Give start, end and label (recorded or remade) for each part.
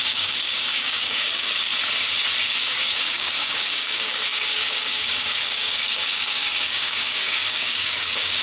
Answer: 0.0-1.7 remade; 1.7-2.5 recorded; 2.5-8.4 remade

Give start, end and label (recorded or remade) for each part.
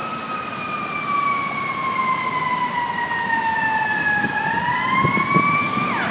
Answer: 0.0-6.1 recorded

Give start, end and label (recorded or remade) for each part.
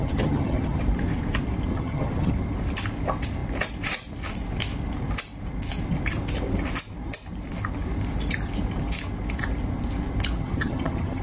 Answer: 0.0-0.8 remade; 0.8-1.7 recorded; 1.7-2.3 remade; 2.3-10.4 recorded; 10.4-11.2 remade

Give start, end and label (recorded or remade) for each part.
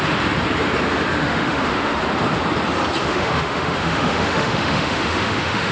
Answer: 0.0-1.2 recorded; 1.2-2.0 remade; 2.0-3.0 recorded; 3.0-5.7 remade